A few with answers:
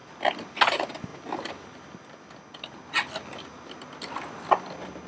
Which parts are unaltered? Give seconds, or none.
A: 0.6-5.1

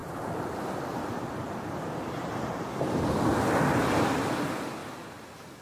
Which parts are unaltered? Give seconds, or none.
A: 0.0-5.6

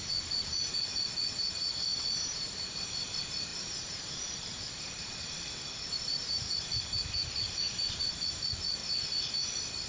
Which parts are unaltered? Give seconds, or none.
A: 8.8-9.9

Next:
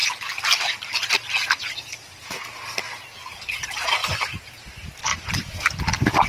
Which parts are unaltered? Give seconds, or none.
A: 0.0-5.1; 5.8-6.3

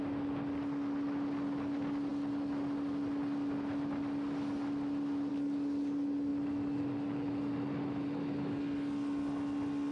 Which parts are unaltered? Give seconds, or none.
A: 0.0-9.9

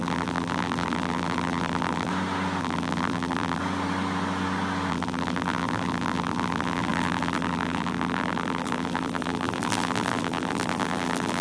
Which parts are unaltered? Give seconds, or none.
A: 2.1-2.6; 3.6-4.9

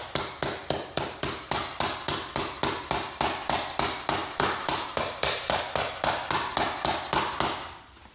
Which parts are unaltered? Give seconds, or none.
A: 0.0-0.6; 1.7-4.2; 5.6-8.1